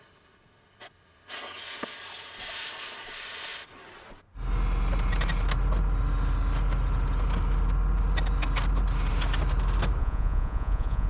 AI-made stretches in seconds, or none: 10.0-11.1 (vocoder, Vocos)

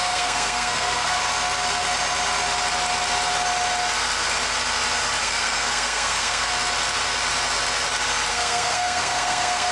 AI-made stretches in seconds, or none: 0.0-1.2 (codec, SNAC); 5.2-6.5; 8.3-9.7

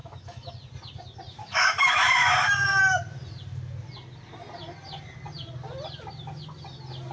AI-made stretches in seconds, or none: 0.0-0.5 (autoencoder, DAC-VAE); 1.4-2.8

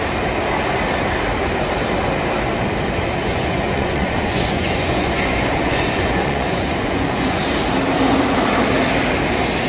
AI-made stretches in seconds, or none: 3.2-7.4 (vocoder, Vocos)

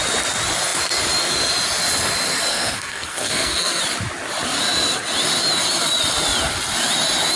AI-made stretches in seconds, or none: 2.5-3.8 (codec, SNAC)

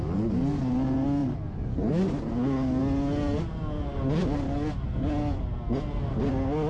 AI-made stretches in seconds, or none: none